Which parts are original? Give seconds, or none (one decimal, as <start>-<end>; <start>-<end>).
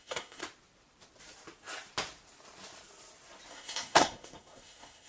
0.4-3.5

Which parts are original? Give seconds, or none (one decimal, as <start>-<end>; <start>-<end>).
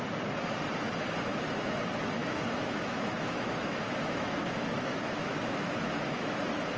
0.0-1.3; 1.8-2.2; 6.3-6.8